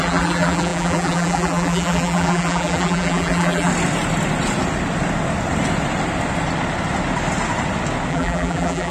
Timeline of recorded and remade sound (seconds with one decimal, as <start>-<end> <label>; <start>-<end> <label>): 0.0-3.7 remade; 3.7-8.1 recorded; 8.1-8.9 remade